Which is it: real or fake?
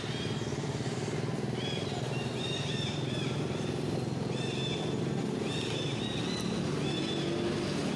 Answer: real